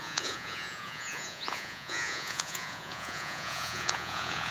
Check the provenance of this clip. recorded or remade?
remade